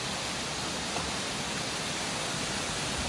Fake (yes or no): no